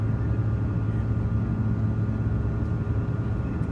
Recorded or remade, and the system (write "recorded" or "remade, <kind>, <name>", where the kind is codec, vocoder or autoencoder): recorded